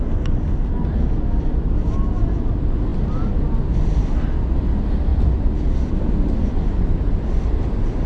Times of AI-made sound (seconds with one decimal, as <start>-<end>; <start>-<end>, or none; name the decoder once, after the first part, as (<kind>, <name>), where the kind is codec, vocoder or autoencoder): none